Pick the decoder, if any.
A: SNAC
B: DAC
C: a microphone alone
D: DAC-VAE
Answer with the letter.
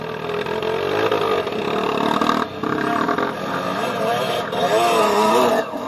C